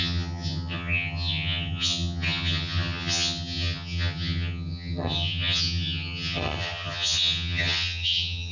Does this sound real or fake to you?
fake